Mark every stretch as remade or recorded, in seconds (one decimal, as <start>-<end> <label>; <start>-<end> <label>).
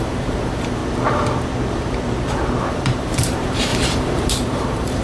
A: 0.0-0.8 remade; 0.8-2.7 recorded; 2.7-5.0 remade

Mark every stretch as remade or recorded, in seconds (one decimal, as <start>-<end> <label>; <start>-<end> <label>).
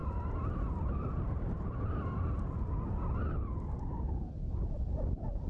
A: 0.0-5.5 recorded